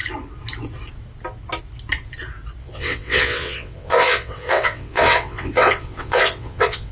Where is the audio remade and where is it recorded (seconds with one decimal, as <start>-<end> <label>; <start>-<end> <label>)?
0.0-2.6 recorded; 2.6-6.9 remade